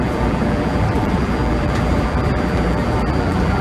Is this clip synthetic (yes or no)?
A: yes